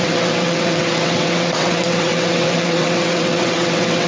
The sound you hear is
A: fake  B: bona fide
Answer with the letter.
A